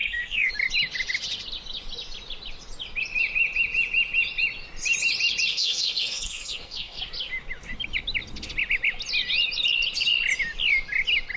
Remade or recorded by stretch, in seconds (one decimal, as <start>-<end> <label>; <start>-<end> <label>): 0.0-0.5 remade; 0.5-5.5 recorded; 5.5-7.0 remade; 7.0-11.4 recorded